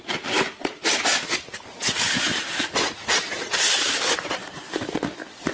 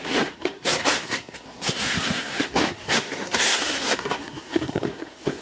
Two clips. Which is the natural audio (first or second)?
first